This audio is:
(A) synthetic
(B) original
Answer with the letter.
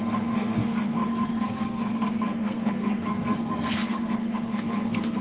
A